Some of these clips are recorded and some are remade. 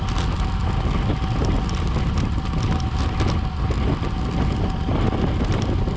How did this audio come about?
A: recorded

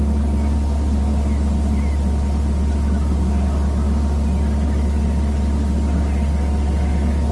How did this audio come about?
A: recorded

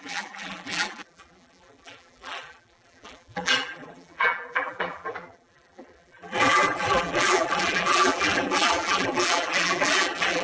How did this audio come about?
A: remade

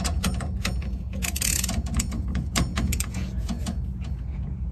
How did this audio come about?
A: remade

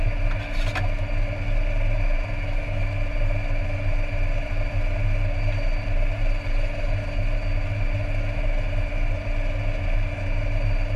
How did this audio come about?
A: recorded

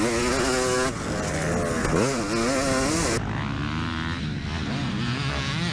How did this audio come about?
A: recorded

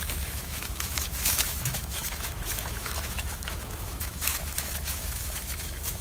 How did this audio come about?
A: remade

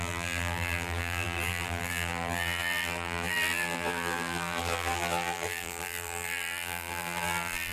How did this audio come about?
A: remade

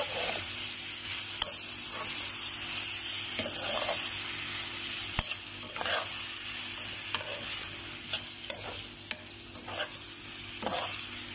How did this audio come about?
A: recorded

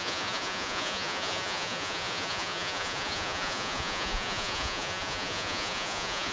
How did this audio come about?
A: remade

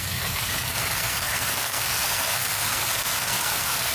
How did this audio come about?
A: remade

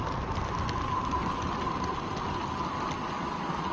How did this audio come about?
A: recorded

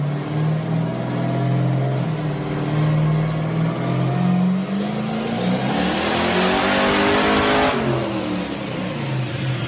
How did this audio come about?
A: recorded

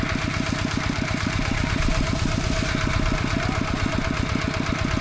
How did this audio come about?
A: recorded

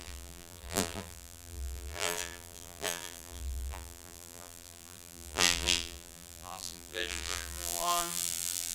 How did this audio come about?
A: remade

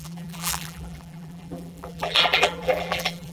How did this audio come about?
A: remade